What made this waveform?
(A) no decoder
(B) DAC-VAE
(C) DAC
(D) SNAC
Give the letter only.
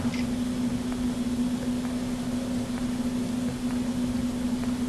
A